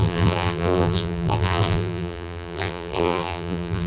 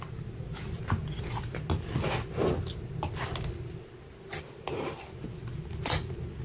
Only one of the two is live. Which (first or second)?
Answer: second